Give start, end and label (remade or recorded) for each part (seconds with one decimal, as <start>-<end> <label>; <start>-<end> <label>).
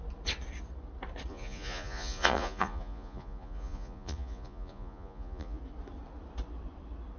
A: 0.0-1.3 recorded; 1.3-5.6 remade; 5.6-7.2 recorded